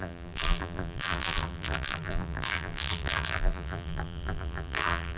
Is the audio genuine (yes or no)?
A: no